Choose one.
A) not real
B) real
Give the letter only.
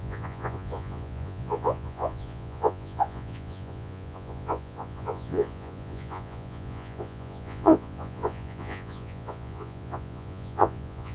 A